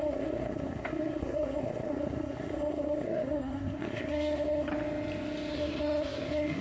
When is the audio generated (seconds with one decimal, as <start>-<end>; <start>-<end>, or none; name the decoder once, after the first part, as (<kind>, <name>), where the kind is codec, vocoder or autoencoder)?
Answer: 0.0-4.7 (codec, SNAC); 5.5-6.6